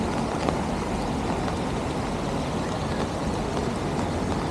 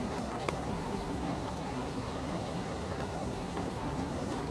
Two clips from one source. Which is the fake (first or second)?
second